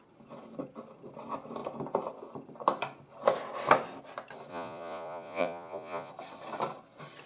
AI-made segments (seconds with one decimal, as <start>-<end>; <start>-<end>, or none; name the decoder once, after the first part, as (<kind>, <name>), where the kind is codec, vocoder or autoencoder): 4.5-6.1 (vocoder, Vocos)